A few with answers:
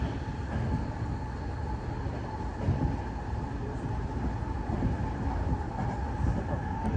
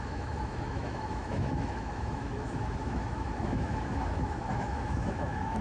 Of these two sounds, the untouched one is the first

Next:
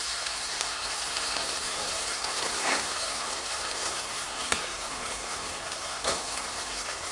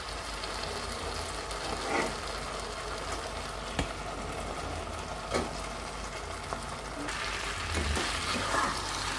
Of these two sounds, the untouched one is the second